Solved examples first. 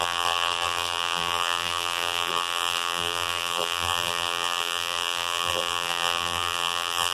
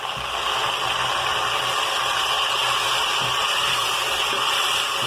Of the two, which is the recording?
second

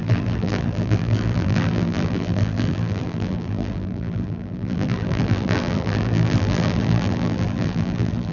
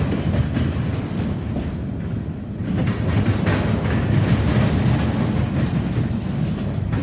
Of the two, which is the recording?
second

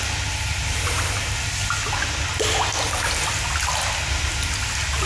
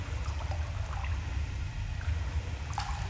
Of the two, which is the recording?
first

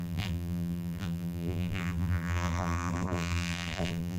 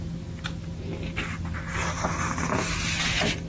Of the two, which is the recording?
second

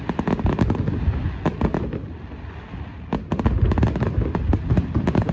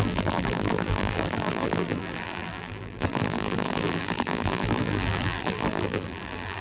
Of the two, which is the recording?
first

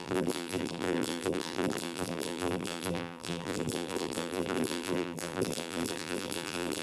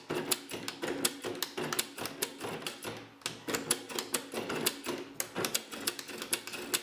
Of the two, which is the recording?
second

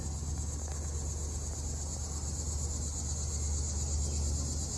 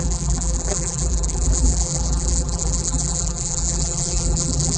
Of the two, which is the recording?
first